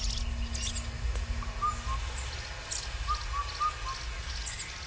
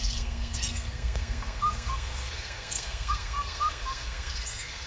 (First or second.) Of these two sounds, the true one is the first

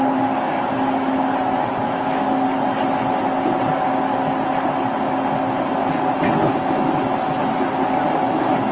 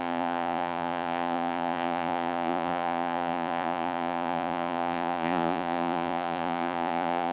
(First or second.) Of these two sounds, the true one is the first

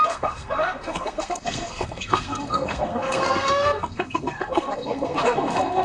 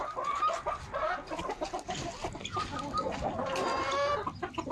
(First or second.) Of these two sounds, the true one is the second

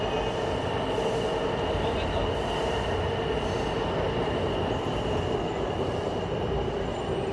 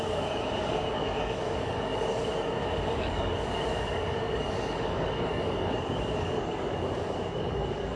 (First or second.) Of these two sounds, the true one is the first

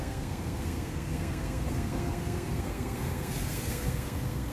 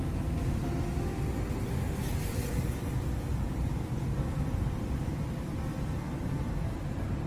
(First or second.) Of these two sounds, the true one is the second